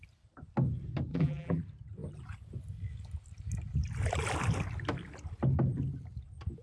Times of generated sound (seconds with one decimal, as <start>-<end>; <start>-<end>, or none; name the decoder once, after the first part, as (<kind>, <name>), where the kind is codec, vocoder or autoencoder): 1.1-1.6 (vocoder, BigVGAN v2)